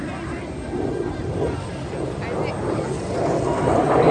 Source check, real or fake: real